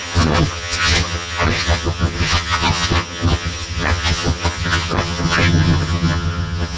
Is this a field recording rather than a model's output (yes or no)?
no